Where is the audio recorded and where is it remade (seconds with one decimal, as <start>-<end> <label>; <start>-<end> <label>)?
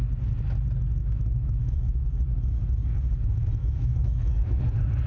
0.0-1.0 recorded; 1.0-2.1 remade; 2.1-3.6 recorded; 3.6-4.6 remade; 4.6-5.1 recorded